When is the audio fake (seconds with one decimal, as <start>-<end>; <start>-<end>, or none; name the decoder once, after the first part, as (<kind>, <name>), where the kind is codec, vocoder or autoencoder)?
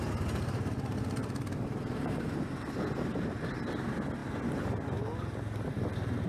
none